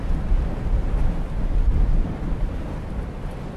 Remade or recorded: recorded